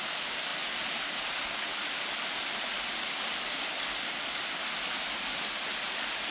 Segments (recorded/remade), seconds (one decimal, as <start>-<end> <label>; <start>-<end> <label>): 0.0-6.3 recorded